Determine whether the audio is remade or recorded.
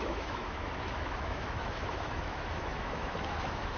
remade